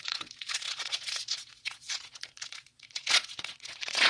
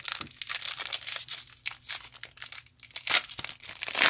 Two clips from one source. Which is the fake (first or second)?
first